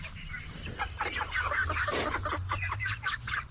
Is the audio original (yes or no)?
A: no